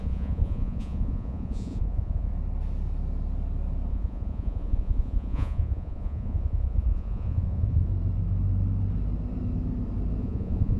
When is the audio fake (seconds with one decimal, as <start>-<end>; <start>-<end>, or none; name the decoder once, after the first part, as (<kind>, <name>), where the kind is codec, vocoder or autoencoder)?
0.0-2.3 (vocoder, Vocos); 3.9-7.9; 10.2-10.8